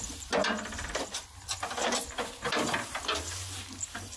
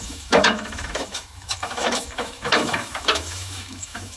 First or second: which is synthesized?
second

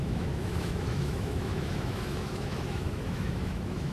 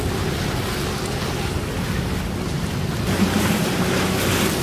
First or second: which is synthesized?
first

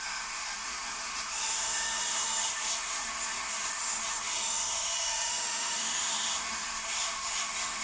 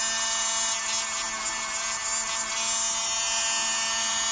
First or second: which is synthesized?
first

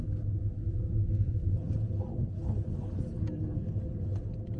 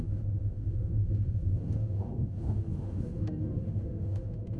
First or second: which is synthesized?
second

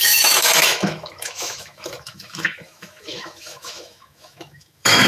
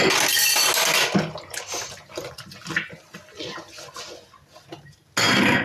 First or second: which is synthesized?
first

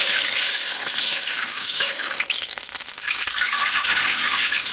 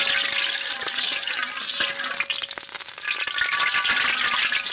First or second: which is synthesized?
first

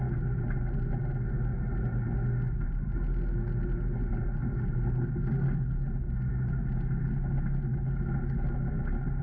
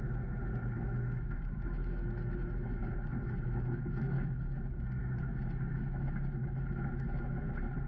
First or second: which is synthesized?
second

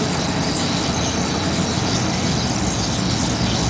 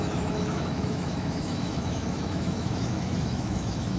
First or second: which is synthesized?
second